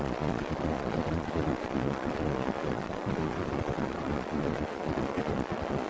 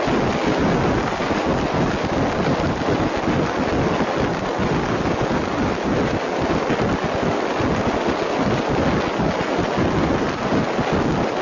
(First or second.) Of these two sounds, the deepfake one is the first